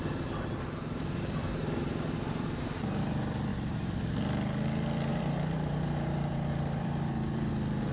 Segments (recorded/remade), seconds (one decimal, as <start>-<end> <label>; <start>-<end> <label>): 0.0-1.4 recorded; 1.4-3.0 remade; 3.0-3.5 recorded; 3.5-4.0 remade; 4.0-5.1 recorded; 5.1-7.5 remade; 7.5-7.9 recorded